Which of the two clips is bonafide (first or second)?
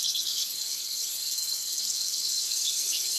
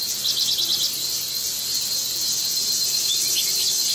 second